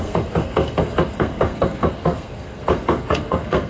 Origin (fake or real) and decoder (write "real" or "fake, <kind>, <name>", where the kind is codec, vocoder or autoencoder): fake, codec, SNAC